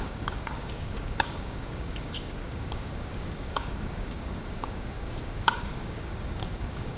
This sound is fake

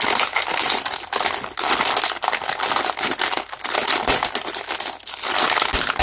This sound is real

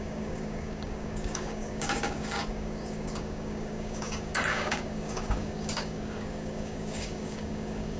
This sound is fake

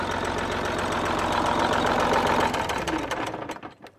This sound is real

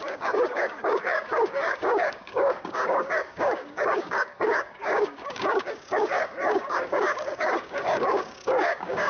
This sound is fake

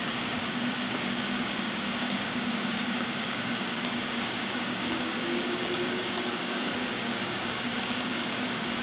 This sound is fake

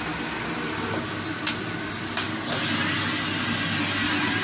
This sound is real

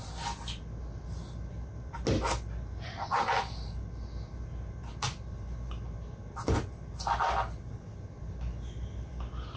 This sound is real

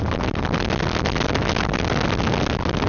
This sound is real